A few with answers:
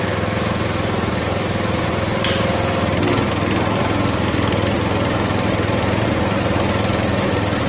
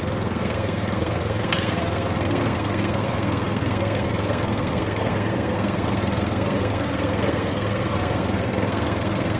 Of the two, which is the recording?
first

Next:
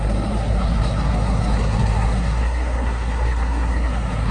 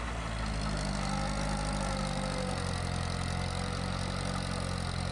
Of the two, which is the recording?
second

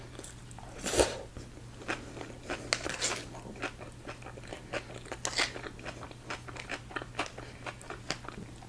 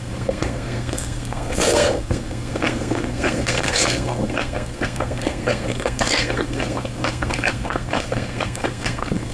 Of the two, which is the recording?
first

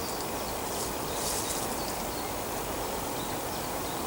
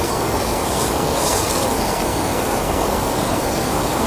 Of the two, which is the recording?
first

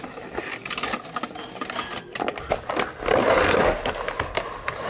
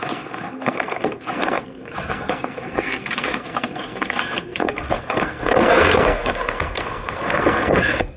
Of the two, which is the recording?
first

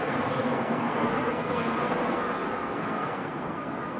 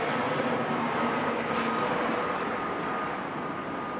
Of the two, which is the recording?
second